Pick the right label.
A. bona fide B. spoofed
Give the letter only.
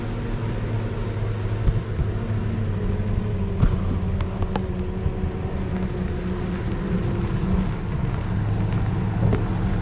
A